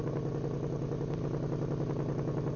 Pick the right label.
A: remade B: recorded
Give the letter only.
B